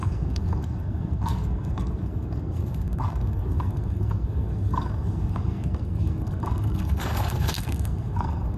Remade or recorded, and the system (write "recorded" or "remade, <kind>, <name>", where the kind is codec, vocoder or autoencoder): remade, codec, SNAC